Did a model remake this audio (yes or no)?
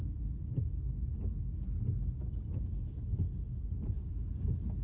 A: no